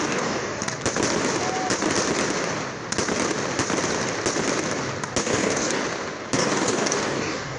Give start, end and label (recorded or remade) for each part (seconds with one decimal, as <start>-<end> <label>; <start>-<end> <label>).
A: 0.0-0.6 remade; 0.6-5.2 recorded; 5.2-5.8 remade; 5.8-6.3 recorded; 6.3-7.6 remade